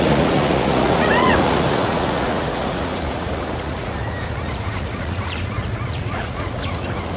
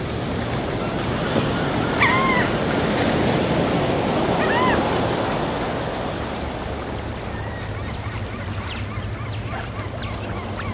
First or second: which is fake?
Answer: first